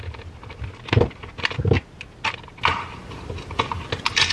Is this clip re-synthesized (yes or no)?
no